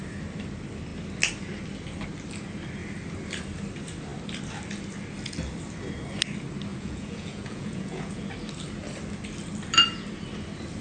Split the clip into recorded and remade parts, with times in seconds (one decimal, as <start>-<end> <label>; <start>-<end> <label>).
0.0-6.7 recorded; 6.7-8.3 remade; 8.3-10.8 recorded